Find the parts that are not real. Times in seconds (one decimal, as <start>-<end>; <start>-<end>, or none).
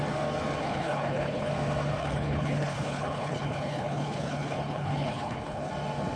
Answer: 0.6-1.5; 2.0-5.7